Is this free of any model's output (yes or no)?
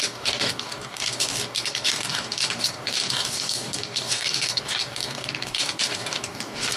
no